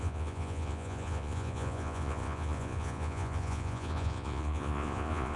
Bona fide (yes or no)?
no